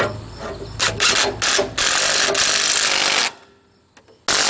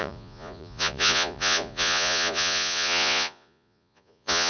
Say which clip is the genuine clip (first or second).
first